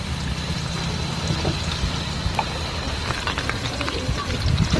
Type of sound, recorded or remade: recorded